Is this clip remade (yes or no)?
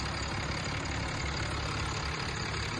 no